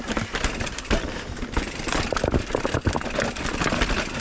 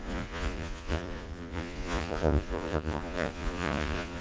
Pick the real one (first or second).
first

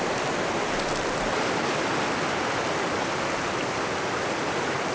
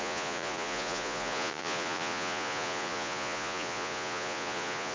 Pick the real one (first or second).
first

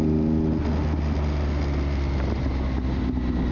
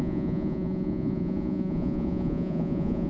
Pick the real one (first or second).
first